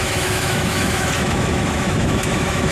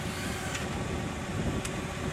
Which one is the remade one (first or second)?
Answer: first